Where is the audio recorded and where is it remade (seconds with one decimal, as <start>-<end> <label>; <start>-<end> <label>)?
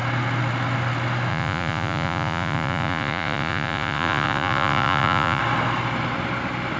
0.0-1.3 recorded; 1.3-5.4 remade; 5.4-6.8 recorded